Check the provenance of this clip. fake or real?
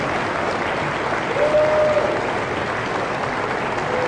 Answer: real